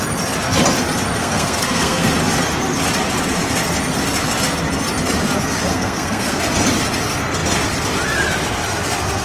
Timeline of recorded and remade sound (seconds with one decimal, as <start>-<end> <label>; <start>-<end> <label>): 0.0-1.2 recorded; 1.2-2.1 remade; 2.1-5.7 recorded; 5.7-6.4 remade; 6.4-9.2 recorded